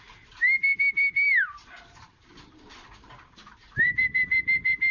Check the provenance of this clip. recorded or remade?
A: remade